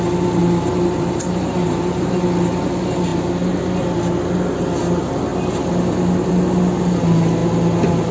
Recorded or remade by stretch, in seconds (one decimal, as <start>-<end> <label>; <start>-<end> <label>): 0.0-0.4 recorded; 0.4-2.2 remade; 2.2-8.1 recorded